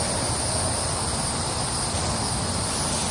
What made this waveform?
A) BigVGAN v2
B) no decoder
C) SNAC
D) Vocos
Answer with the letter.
B